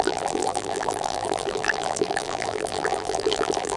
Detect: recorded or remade remade